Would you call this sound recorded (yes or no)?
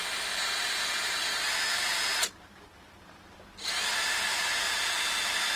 yes